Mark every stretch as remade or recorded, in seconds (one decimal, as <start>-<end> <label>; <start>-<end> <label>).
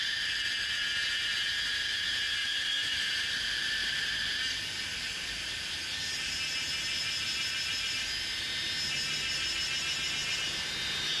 0.0-2.4 recorded; 2.4-3.1 remade; 3.1-11.2 recorded